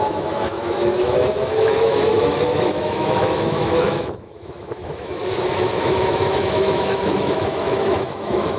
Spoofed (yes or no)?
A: yes